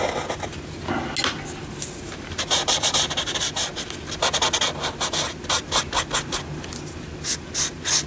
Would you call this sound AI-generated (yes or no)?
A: no